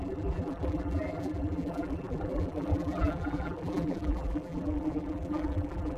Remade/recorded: remade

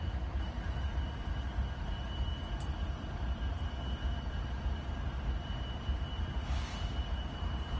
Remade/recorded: remade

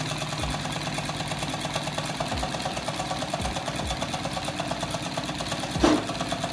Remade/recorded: recorded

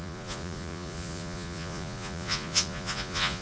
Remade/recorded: remade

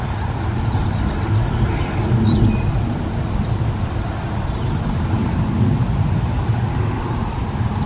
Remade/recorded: recorded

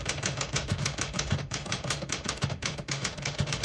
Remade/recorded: remade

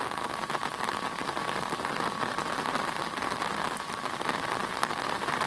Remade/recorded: recorded